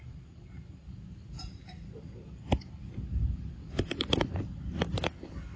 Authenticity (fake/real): real